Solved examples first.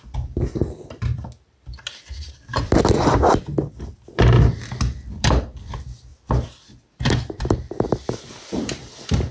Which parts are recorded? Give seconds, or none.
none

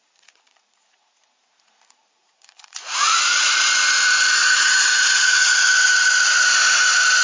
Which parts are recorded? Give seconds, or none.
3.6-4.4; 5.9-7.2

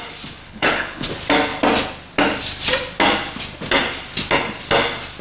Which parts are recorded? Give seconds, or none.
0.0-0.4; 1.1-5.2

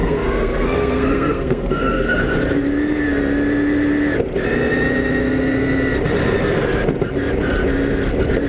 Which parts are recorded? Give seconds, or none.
2.2-8.5